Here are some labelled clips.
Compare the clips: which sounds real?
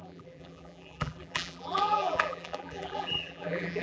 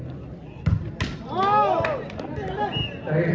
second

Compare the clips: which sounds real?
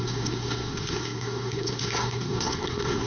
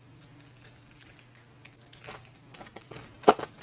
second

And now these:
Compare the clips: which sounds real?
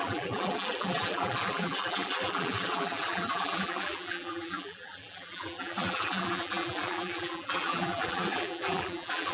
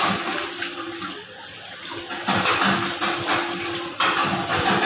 second